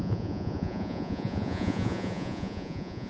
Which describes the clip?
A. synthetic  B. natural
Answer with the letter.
A